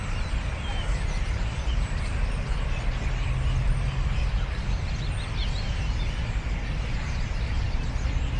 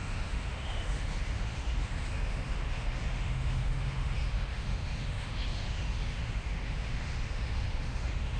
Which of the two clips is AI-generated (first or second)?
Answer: second